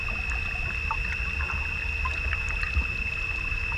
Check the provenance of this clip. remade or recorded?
recorded